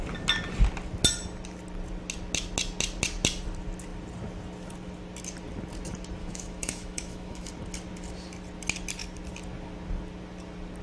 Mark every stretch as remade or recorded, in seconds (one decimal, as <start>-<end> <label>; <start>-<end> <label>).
0.0-6.2 recorded; 6.2-7.5 remade; 7.5-10.8 recorded

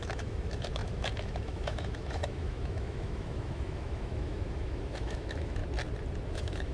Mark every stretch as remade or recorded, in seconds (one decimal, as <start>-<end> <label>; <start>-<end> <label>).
0.0-5.6 remade; 5.6-6.3 recorded; 6.3-6.7 remade

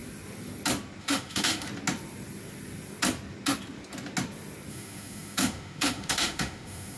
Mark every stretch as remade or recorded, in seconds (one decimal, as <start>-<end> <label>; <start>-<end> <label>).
0.0-1.0 recorded; 1.0-1.7 remade; 1.7-4.7 recorded; 4.7-7.0 remade